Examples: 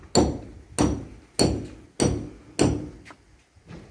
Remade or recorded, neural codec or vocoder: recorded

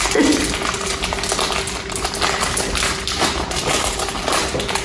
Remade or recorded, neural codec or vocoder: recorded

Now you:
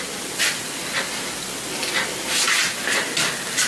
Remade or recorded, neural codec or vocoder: recorded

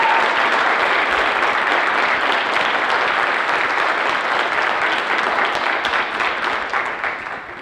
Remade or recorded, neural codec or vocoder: recorded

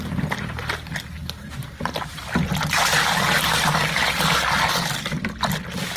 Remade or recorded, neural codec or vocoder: recorded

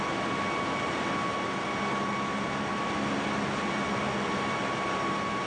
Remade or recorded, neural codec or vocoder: recorded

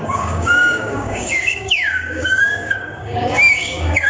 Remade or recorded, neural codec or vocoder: remade, codec, DAC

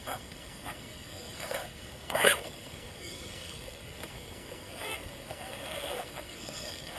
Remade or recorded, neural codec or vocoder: remade, codec, SNAC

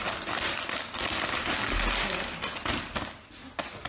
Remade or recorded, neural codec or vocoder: recorded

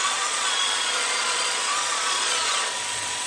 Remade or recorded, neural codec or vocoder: remade, vocoder, Vocos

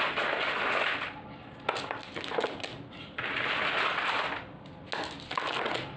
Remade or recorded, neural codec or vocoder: recorded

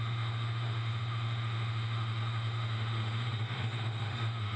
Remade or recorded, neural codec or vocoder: remade, autoencoder, DAC-VAE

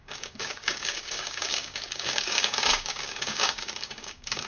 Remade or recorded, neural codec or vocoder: remade, codec, DAC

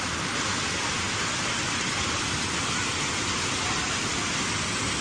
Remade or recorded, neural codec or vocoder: recorded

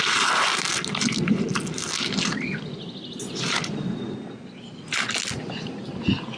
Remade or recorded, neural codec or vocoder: recorded